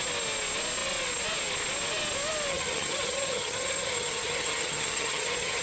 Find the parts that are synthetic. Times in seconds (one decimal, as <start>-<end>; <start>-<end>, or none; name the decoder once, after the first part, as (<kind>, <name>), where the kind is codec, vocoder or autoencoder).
2.5-5.6 (vocoder, HiFi-GAN)